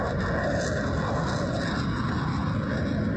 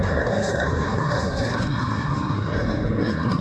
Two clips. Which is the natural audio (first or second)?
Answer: first